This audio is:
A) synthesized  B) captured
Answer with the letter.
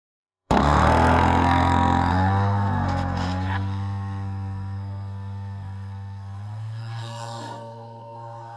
A